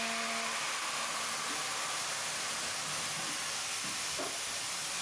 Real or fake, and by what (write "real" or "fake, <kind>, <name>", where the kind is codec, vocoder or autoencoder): real